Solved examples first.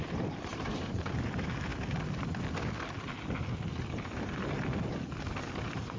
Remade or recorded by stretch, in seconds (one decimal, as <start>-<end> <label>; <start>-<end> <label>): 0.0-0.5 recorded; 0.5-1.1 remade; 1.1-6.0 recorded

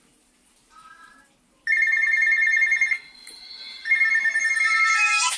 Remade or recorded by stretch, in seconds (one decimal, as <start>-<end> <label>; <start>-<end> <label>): 0.0-5.4 recorded

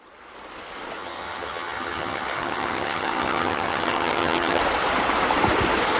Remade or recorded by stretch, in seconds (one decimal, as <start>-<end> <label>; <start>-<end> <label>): 0.0-1.0 recorded; 1.0-4.6 remade; 4.6-6.0 recorded